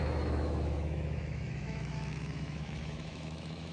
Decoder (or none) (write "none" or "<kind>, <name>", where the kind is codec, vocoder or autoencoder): autoencoder, DAC-VAE